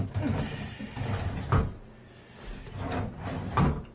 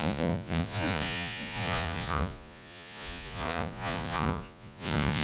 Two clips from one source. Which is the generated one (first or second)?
second